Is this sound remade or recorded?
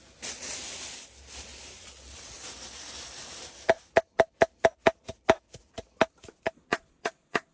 recorded